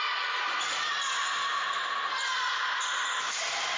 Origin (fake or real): real